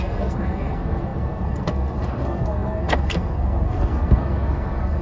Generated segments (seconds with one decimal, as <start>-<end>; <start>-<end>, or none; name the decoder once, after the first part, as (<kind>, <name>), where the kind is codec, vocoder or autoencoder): 0.0-5.0 (codec, SNAC)

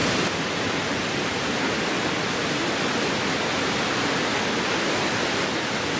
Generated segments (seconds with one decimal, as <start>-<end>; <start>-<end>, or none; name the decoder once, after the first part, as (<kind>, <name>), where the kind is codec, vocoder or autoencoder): none

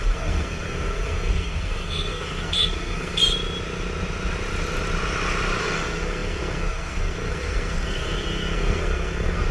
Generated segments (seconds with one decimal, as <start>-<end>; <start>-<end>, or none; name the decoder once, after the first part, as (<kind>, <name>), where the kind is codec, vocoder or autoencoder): 0.0-3.2 (codec, SNAC); 5.6-9.5